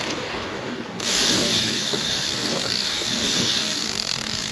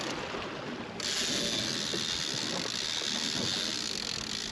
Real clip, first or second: second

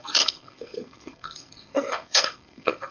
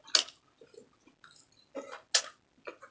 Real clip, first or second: second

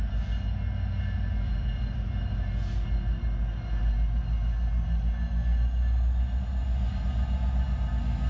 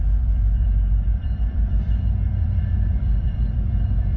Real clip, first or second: first